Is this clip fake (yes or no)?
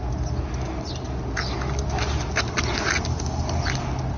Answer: no